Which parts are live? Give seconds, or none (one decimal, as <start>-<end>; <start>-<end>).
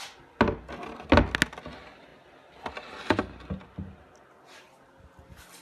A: 0.0-5.6